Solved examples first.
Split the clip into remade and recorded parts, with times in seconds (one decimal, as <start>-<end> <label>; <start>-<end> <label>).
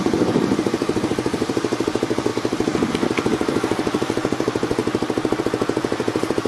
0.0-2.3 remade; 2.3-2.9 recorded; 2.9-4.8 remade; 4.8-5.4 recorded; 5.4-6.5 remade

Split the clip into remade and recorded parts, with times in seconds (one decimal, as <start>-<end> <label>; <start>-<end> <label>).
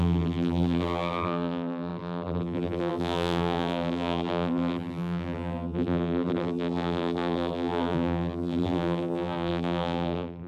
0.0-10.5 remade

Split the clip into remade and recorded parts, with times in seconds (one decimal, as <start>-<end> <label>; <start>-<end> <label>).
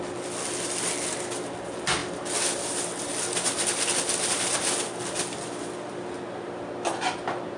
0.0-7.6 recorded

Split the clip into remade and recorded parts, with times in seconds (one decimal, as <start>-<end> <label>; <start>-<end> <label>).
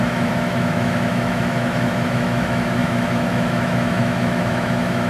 0.0-5.1 remade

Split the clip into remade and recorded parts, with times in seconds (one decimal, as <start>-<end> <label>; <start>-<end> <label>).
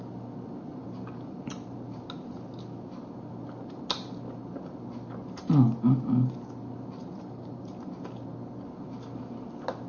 0.0-0.7 recorded; 0.7-1.4 remade; 1.4-7.0 recorded; 7.0-7.7 remade; 7.7-9.9 recorded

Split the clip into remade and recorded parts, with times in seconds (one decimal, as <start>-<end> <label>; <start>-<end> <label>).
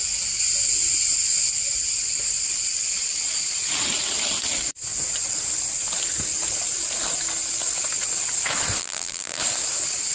0.0-8.8 recorded; 8.8-9.4 remade; 9.4-10.1 recorded